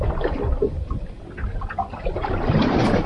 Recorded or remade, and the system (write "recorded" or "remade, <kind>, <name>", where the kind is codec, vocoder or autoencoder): remade, vocoder, BigVGAN v2